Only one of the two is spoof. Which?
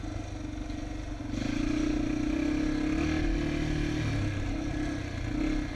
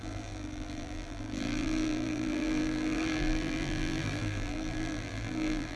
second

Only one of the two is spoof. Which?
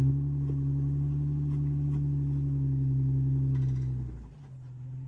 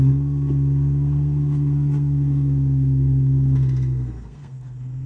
second